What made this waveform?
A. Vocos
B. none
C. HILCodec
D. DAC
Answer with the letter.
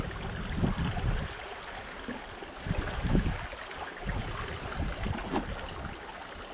B